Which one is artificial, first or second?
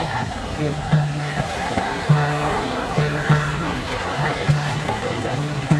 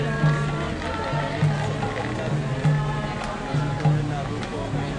first